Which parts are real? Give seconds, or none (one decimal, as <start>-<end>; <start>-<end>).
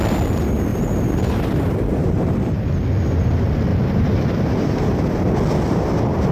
0.0-0.7; 2.7-3.7; 4.9-6.3